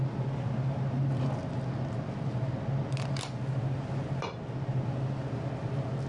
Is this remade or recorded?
recorded